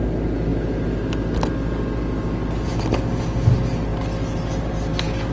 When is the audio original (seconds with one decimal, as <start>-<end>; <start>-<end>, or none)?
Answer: 0.0-5.3